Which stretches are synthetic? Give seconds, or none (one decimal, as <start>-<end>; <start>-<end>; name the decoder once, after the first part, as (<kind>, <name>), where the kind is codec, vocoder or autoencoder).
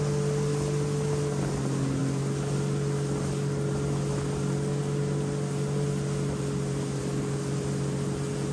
none